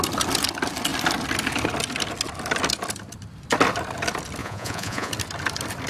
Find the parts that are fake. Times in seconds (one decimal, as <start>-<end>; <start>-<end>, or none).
4.4-5.1